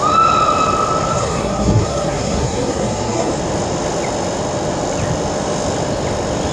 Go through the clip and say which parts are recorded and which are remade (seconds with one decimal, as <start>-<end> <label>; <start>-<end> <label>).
0.0-1.1 recorded; 1.1-3.3 remade; 3.3-6.5 recorded